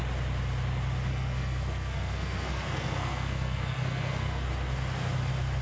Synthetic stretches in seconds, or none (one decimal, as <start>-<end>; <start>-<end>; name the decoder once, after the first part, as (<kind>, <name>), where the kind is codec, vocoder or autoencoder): 1.1-4.5 (codec, SNAC)